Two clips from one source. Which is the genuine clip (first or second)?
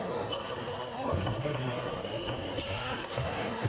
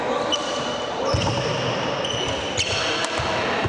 second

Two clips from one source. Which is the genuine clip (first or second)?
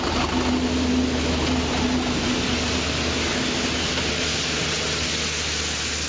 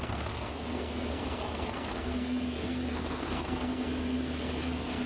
first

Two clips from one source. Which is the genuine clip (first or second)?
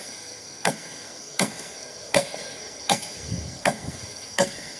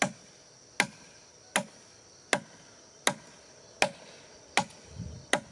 second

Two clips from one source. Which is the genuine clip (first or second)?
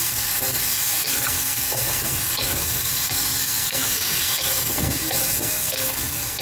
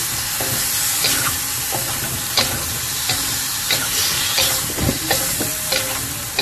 second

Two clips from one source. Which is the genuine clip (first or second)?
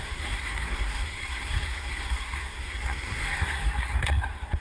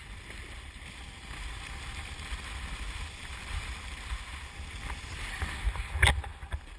second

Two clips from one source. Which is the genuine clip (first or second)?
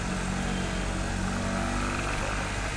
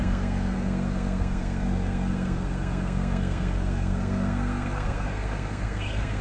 first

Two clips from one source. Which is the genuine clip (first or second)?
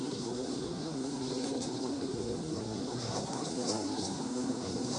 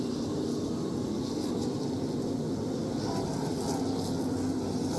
second